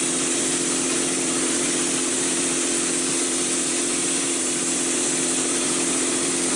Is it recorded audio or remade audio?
remade